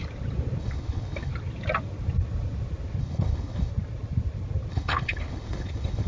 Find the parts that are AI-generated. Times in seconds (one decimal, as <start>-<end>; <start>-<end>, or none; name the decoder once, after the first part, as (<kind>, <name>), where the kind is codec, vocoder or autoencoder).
0.6-1.3 (codec, HILCodec); 3.0-3.7; 4.7-6.1